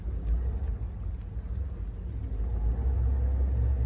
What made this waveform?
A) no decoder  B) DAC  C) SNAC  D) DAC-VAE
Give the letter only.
A